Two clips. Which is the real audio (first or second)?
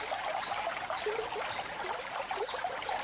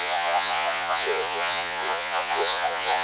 first